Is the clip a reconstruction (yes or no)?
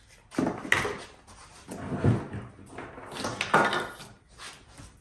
no